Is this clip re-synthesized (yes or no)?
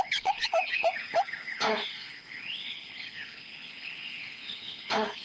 yes